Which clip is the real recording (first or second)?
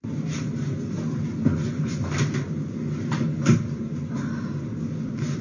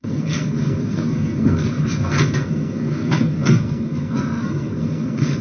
first